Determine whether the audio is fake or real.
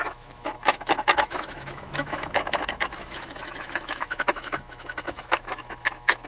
fake